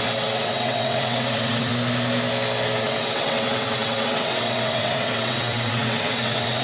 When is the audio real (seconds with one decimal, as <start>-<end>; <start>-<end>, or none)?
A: 1.7-2.8